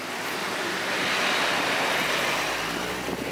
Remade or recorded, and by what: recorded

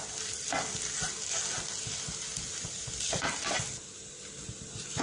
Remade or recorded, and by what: recorded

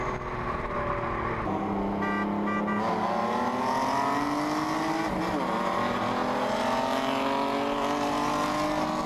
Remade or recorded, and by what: recorded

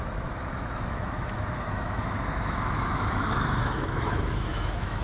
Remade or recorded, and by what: remade, autoencoder, DAC-VAE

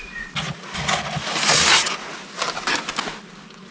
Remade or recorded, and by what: recorded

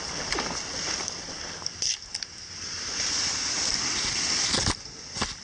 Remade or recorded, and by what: recorded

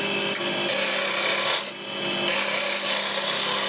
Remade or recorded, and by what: recorded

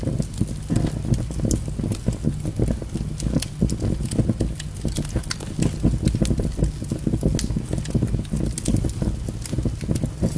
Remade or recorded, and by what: recorded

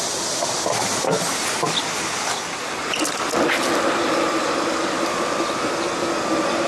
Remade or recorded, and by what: recorded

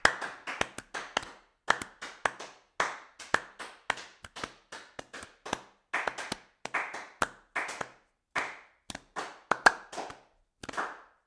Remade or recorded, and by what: recorded